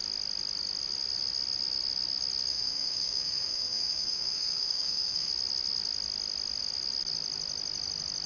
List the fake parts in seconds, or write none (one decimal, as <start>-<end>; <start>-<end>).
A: 2.5-5.3

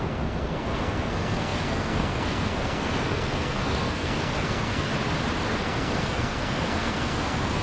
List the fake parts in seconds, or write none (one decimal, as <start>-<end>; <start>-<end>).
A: 0.0-4.9; 5.5-7.6